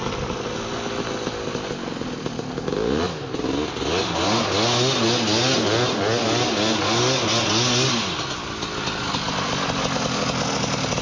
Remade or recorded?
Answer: recorded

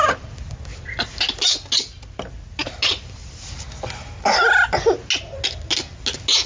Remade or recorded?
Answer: recorded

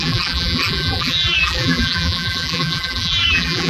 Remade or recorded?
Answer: remade